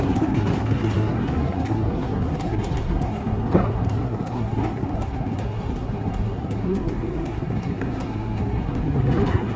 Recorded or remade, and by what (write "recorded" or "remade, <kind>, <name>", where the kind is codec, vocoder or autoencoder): remade, codec, SNAC